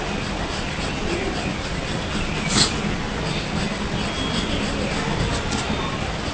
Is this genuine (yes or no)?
yes